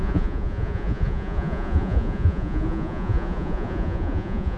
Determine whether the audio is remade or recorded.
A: remade